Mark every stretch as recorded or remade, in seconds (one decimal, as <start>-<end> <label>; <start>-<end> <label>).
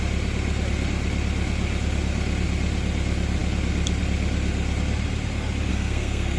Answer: 0.0-5.7 recorded; 5.7-6.4 remade